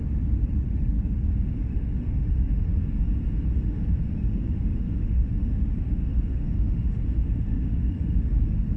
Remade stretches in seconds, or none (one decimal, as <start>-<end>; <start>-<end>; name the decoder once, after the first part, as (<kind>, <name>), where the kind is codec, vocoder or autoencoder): 0.0-2.7 (autoencoder, DAC-VAE); 3.6-8.8